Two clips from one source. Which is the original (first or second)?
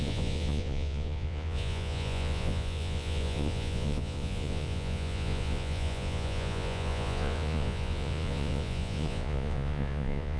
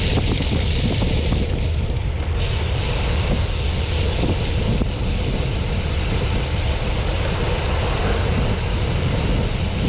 second